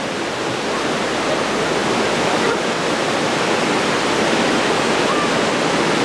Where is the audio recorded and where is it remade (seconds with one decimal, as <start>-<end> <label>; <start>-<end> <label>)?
0.0-1.8 recorded; 1.8-5.4 remade; 5.4-6.0 recorded